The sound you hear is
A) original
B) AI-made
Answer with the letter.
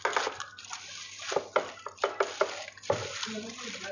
A